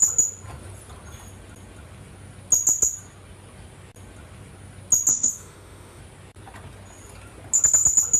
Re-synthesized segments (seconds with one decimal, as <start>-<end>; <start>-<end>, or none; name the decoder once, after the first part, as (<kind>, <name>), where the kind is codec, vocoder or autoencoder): 5.1-6.0 (autoencoder, DAC-VAE)

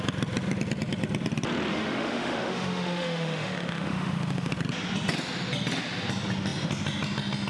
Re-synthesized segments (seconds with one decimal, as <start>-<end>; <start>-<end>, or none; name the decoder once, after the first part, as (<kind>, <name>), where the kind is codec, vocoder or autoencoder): 1.7-4.5 (autoencoder, DAC-VAE)

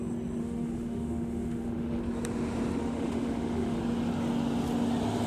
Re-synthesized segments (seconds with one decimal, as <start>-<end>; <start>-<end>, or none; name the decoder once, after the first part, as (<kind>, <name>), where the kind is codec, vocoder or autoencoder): 0.4-2.0 (autoencoder, DAC-VAE); 2.8-3.8

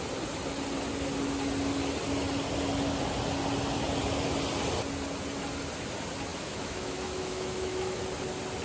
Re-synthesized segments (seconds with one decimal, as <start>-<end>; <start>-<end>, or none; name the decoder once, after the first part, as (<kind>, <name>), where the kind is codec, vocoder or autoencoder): 6.3-8.0 (autoencoder, DAC-VAE)

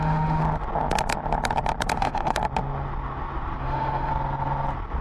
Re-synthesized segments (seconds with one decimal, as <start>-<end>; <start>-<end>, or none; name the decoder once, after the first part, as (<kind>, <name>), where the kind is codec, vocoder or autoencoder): 0.0-0.4 (autoencoder, DAC-VAE); 2.0-2.4; 3.6-4.1

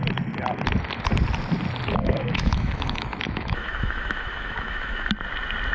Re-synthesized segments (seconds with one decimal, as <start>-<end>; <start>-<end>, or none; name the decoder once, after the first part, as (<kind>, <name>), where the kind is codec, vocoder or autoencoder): 2.0-5.1 (autoencoder, DAC-VAE)

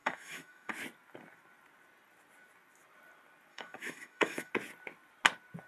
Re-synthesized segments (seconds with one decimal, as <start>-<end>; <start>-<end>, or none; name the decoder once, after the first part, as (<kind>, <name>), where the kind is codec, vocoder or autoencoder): 0.0-0.7 (autoencoder, DAC-VAE); 3.5-4.5